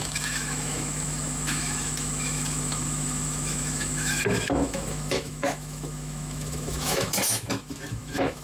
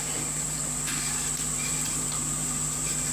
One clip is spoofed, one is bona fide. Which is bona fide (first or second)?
second